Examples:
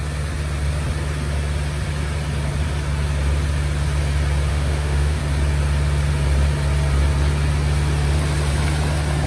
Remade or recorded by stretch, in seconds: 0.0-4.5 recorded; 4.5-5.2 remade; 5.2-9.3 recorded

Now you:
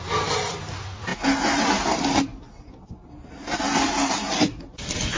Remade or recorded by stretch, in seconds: 0.0-5.2 recorded

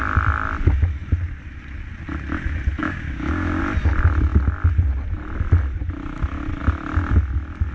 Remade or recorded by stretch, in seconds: 0.0-2.8 recorded; 2.8-3.6 remade; 3.6-7.7 recorded

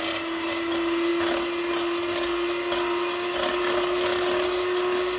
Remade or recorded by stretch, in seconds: 0.0-5.2 recorded

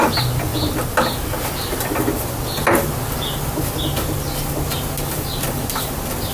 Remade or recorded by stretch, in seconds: 0.0-6.3 recorded

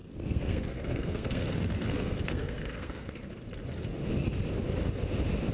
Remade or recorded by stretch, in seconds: 0.0-3.3 remade; 3.3-5.5 recorded

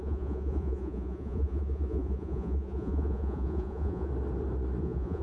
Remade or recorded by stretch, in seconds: 0.0-4.1 remade; 4.1-4.8 recorded; 4.8-5.2 remade

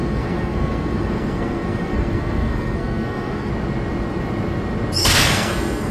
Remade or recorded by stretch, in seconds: 0.0-3.5 remade; 3.5-5.0 recorded; 5.0-5.9 remade